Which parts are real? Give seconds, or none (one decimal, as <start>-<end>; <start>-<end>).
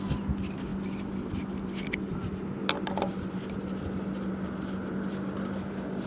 0.0-6.1